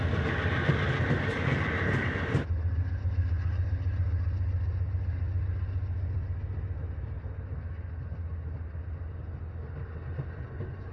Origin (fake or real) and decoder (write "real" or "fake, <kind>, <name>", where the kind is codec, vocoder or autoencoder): real